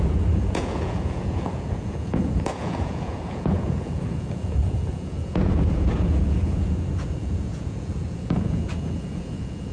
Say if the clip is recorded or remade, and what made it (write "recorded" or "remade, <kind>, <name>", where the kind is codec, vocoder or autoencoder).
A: remade, vocoder, Vocos